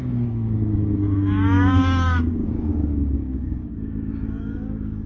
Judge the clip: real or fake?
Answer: fake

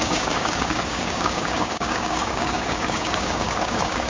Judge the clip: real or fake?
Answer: fake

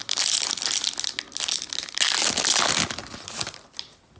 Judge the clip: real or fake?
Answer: real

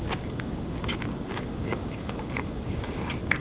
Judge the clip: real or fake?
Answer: fake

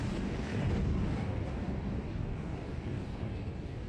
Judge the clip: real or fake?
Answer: fake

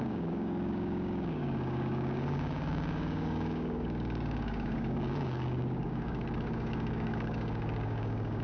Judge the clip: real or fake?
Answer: fake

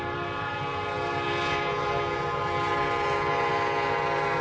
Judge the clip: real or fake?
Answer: real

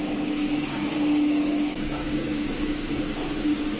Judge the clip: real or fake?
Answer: fake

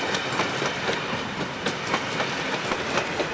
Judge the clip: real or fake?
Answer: real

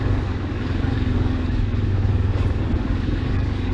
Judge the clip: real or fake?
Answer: fake